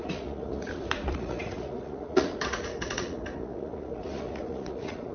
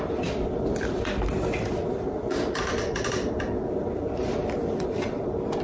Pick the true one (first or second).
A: second